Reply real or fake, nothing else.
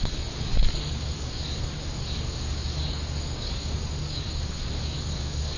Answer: fake